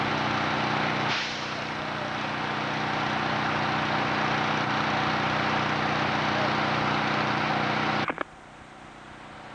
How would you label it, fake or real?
real